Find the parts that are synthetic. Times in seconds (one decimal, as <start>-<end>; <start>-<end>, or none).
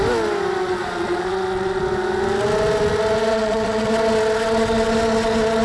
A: 0.7-1.8; 3.3-3.9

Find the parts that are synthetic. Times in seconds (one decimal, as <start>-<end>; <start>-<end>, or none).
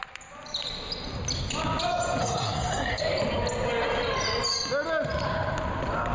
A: 2.2-3.0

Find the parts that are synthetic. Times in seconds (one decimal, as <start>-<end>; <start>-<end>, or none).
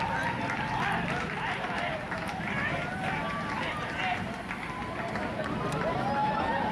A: 1.9-2.4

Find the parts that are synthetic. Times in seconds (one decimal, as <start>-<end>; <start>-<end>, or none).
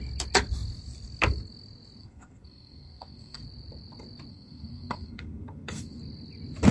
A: 2.0-3.4; 4.3-6.0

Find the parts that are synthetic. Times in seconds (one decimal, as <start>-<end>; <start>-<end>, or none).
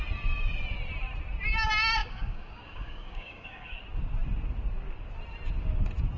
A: 2.0-3.8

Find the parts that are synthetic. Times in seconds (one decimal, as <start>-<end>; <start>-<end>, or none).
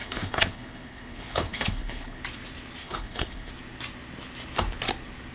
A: 0.0-2.2; 2.8-3.5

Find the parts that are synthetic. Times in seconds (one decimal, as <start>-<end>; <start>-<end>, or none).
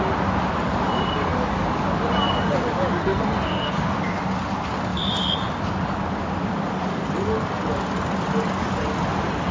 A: 3.0-3.8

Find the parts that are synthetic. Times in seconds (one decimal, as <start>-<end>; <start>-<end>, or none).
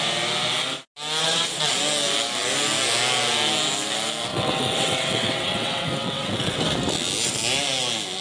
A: 1.2-1.7; 4.3-6.6